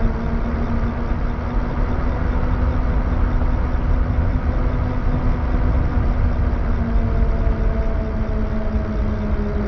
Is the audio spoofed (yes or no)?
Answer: no